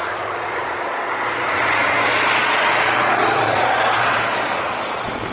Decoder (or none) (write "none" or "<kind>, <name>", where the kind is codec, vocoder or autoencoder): vocoder, Vocos